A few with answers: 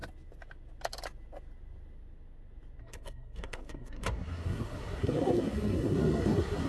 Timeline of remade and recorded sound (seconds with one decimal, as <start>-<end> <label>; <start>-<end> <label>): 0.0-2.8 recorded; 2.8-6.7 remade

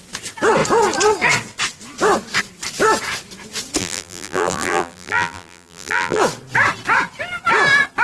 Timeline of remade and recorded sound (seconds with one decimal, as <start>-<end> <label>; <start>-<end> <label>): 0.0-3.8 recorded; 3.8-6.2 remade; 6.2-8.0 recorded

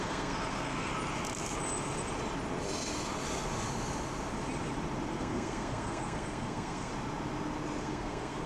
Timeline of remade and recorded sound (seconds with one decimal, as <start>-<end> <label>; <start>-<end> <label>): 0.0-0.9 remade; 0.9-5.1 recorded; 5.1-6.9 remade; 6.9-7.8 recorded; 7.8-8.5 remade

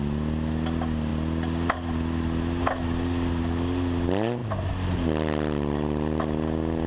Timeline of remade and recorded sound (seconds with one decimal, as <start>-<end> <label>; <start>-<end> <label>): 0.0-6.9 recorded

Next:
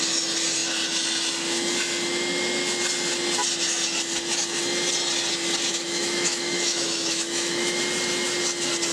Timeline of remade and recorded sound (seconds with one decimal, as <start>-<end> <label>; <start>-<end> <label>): 0.0-5.7 recorded; 5.7-7.8 remade; 7.8-8.9 recorded

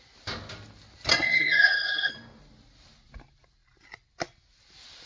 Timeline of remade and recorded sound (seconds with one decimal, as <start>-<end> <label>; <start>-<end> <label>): 0.0-1.1 recorded; 1.1-2.1 remade; 2.1-5.1 recorded

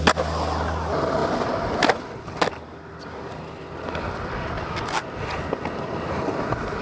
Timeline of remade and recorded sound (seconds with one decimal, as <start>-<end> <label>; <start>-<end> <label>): 0.0-1.2 recorded; 1.2-4.7 remade; 4.7-6.8 recorded

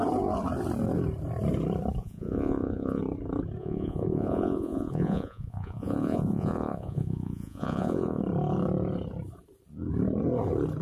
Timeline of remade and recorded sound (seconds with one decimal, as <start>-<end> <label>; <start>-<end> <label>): 0.0-2.0 recorded; 2.0-3.0 remade; 3.0-3.6 recorded; 3.6-8.2 remade; 8.2-10.8 recorded